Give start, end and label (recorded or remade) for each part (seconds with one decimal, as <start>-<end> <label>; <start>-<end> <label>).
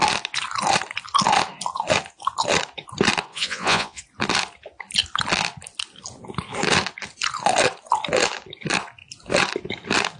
0.0-3.3 recorded; 3.3-4.0 remade; 4.0-10.2 recorded